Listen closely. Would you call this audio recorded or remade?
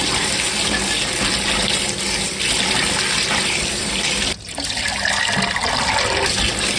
recorded